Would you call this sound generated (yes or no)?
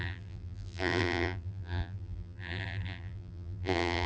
yes